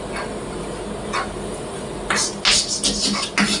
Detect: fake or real real